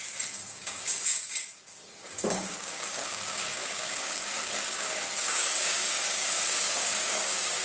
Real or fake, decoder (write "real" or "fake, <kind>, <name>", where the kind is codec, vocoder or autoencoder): fake, codec, DAC